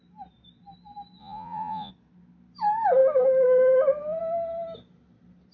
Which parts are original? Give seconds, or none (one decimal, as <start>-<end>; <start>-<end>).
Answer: 0.0-1.2; 1.9-5.5

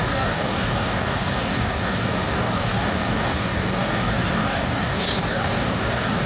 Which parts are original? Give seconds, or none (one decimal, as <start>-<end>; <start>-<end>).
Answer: none

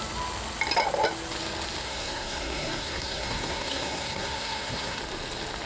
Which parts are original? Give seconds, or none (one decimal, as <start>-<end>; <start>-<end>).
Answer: 0.0-1.8; 5.0-5.7